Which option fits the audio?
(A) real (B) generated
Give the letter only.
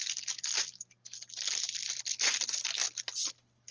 A